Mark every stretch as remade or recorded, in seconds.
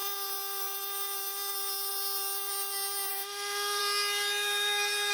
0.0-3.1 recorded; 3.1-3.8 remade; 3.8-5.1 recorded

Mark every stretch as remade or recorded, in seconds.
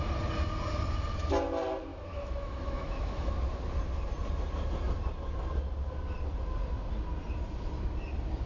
0.0-1.9 recorded; 1.9-3.3 remade; 3.3-8.5 recorded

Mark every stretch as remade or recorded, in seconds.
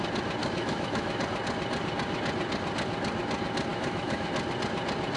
0.0-0.4 recorded; 0.4-1.2 remade; 1.2-3.7 recorded; 3.7-4.3 remade; 4.3-5.2 recorded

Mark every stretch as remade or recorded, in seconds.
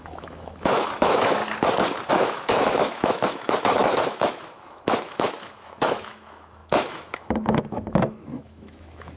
0.0-1.4 remade; 1.4-2.1 recorded; 2.1-9.2 remade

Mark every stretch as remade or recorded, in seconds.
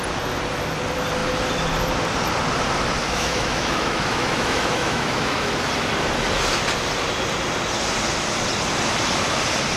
0.0-3.0 recorded; 3.0-5.5 remade; 5.5-9.8 recorded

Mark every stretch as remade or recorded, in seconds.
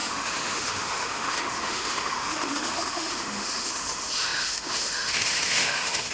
0.0-6.1 remade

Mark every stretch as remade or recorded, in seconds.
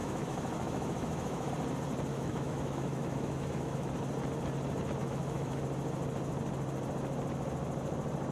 0.0-1.5 remade; 1.5-2.1 recorded; 2.1-3.9 remade; 3.9-5.0 recorded; 5.0-5.6 remade; 5.6-8.3 recorded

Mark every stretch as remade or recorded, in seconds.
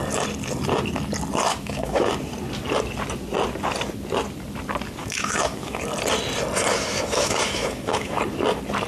0.0-1.5 recorded; 1.5-2.1 remade; 2.1-5.0 recorded; 5.0-5.8 remade; 5.8-6.7 recorded; 6.7-8.2 remade; 8.2-8.9 recorded